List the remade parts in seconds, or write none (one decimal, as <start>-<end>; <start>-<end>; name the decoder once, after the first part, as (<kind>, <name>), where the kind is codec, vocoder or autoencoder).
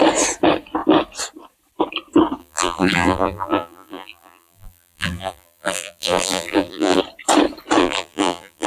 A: 2.4-7.0 (vocoder, BigVGAN v2); 7.8-8.7